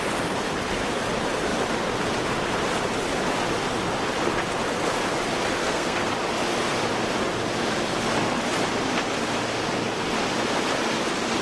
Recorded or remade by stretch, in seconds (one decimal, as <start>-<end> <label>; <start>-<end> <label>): 0.0-5.6 recorded; 5.6-6.1 remade; 6.1-11.4 recorded